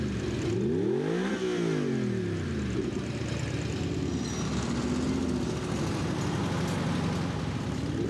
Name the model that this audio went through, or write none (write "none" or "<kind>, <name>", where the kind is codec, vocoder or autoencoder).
none